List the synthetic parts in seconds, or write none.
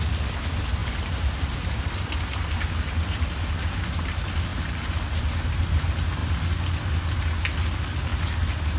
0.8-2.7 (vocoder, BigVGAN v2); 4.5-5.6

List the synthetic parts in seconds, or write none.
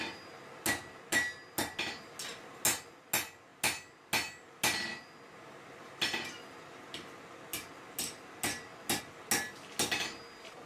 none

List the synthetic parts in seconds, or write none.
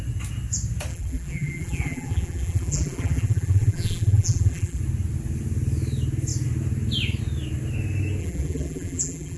0.9-4.8 (vocoder, BigVGAN v2); 8.2-9.4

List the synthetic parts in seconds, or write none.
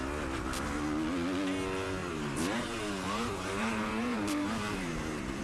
2.0-5.4 (vocoder, BigVGAN v2)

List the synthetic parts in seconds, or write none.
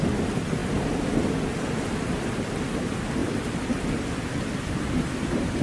3.2-5.6 (vocoder, BigVGAN v2)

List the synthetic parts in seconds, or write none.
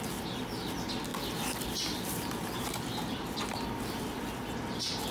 none